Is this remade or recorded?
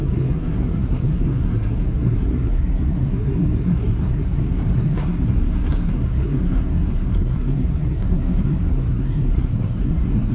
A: remade